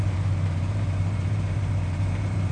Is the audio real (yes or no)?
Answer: no